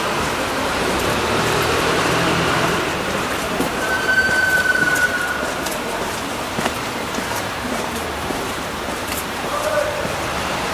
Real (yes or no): no